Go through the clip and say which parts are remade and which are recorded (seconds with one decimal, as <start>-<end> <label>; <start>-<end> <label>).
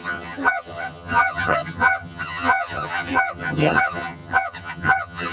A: 0.0-5.3 remade